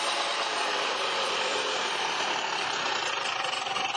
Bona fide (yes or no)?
no